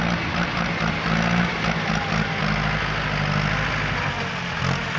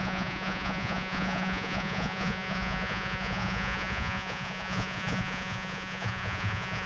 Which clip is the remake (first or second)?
second